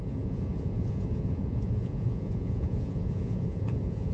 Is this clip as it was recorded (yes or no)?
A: no